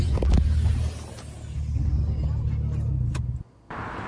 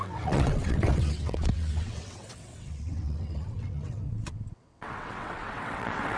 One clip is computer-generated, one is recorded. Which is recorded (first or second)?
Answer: first